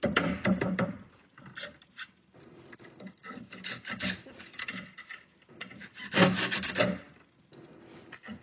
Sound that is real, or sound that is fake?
real